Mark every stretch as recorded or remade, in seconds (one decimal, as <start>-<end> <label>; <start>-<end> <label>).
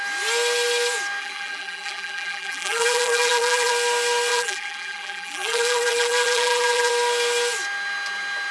0.0-1.2 recorded; 1.2-3.7 remade; 3.7-4.3 recorded; 4.3-6.9 remade; 6.9-8.5 recorded